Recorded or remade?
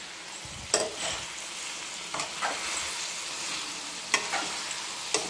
recorded